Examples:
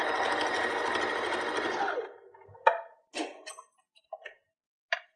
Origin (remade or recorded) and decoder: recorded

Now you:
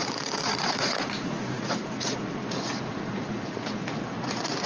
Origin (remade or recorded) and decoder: remade, vocoder, Vocos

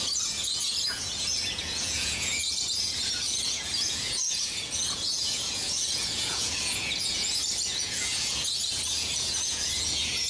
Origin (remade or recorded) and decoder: remade, vocoder, Vocos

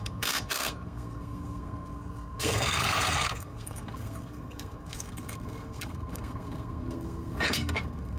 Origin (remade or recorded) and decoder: remade, codec, SNAC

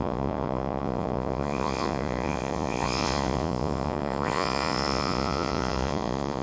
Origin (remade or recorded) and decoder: remade, vocoder, Vocos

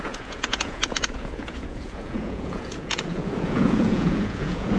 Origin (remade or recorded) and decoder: remade, vocoder, Vocos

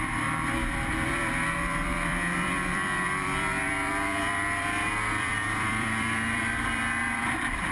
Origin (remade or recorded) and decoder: remade, vocoder, BigVGAN v2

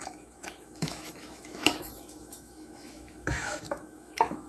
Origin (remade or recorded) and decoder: remade, autoencoder, DAC-VAE